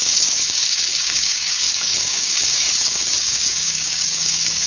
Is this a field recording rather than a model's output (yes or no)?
no